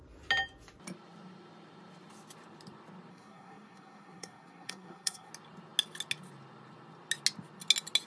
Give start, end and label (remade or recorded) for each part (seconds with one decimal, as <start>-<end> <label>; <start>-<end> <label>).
0.0-3.1 recorded; 3.1-5.3 remade; 5.3-8.1 recorded